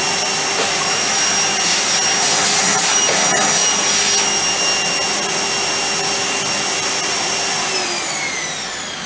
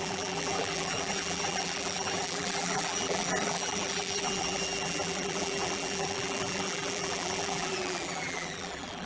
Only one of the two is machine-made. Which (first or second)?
second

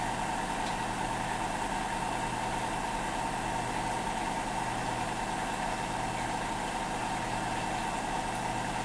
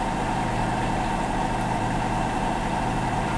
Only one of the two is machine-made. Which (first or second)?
second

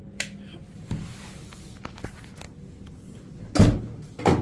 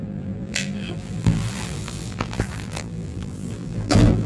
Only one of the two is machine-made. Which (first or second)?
second